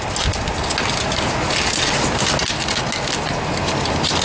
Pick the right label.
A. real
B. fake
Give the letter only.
A